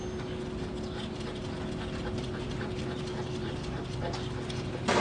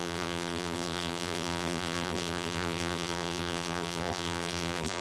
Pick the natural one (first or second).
first